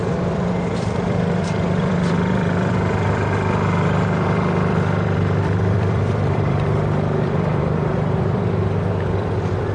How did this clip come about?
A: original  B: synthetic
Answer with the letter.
B